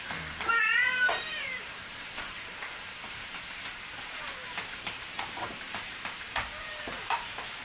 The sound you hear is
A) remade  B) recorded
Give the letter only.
A